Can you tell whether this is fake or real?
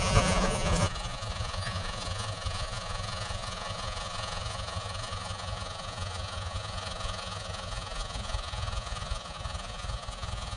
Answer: fake